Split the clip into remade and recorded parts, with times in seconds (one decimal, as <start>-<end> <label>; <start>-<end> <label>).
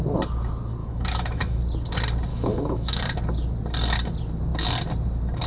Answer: 0.0-0.8 recorded; 0.8-1.6 remade; 1.6-2.3 recorded; 2.3-3.0 remade; 3.0-5.5 recorded